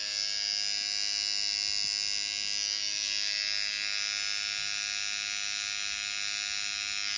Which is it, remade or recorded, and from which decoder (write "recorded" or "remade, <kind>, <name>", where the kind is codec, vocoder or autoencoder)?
recorded